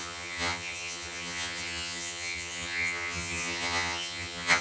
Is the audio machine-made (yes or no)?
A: yes